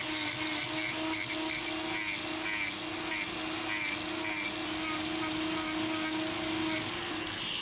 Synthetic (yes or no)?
no